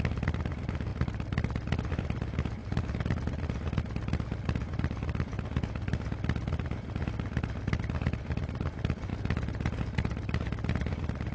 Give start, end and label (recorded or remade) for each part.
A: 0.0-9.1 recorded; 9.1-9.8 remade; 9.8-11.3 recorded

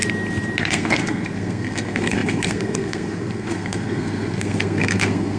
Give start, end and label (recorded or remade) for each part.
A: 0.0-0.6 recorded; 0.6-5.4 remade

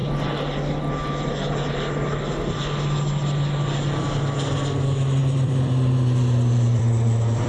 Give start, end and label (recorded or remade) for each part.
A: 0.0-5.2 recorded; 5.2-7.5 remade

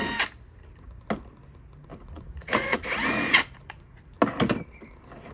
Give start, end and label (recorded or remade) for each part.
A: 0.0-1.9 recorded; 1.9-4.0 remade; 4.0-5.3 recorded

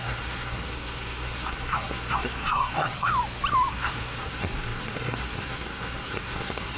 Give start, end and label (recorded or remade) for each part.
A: 0.0-3.1 remade; 3.1-3.7 recorded; 3.7-6.8 remade

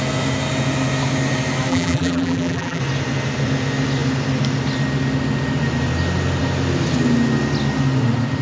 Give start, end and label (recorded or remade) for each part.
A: 0.0-1.7 recorded; 1.7-2.8 remade; 2.8-8.4 recorded

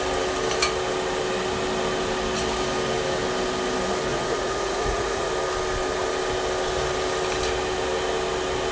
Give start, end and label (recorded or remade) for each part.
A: 0.0-4.1 recorded; 4.1-5.3 remade; 5.3-8.7 recorded

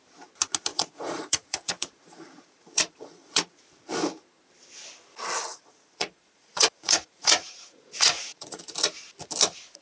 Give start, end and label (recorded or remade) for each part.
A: 0.0-0.7 recorded; 0.7-3.6 remade; 3.6-5.5 recorded; 5.5-8.6 remade; 8.6-9.8 recorded